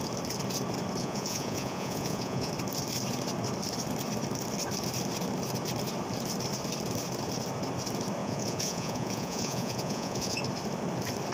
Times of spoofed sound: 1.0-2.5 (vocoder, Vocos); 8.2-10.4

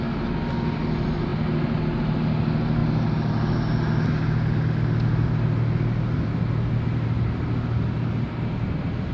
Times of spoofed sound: none

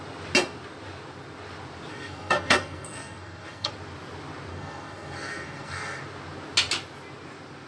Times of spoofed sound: 1.9-3.7 (codec, SNAC); 4.5-6.0

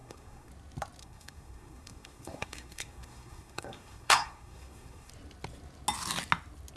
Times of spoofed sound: 0.0-0.5 (codec, SNAC); 1.0-5.1

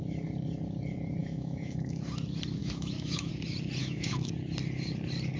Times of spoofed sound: 1.2-2.0 (autoencoder, DAC-VAE); 2.6-3.3; 3.8-4.3

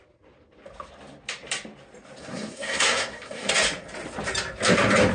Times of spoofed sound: 2.2-3.5 (codec, SNAC)